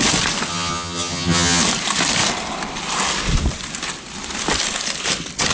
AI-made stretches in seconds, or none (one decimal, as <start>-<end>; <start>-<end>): 0.5-1.6